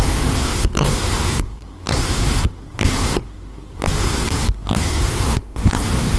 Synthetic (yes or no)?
yes